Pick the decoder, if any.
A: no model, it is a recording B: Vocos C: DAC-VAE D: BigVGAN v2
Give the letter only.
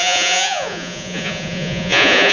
B